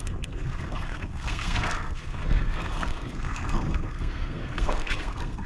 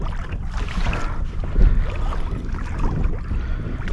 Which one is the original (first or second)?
second